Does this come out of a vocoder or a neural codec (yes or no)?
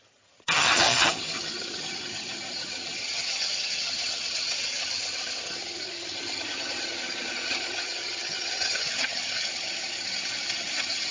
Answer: yes